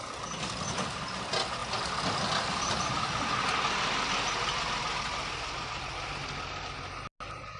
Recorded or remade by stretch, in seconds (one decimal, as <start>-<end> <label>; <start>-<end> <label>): 0.0-7.6 recorded